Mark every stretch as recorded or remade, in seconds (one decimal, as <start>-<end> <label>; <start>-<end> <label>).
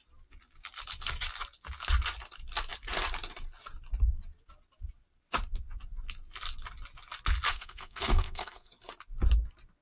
0.0-7.5 recorded; 7.5-8.7 remade; 8.7-9.8 recorded